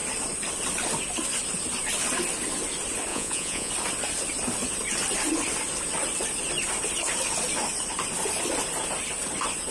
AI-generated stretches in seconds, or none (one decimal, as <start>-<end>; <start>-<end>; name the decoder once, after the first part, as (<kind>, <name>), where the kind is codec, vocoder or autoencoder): 3.1-3.7 (vocoder, Vocos)